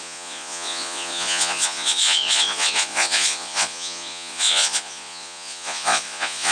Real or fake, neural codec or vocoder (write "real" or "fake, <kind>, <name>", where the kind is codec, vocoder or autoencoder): fake, vocoder, Vocos